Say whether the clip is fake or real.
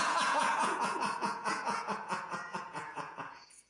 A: fake